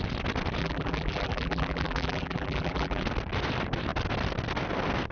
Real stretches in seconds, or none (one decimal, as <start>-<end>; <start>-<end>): 0.0-0.6; 3.0-5.1